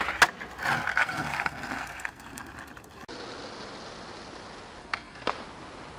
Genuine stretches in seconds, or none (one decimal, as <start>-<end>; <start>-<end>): 0.0-0.9; 2.5-4.8; 5.3-6.0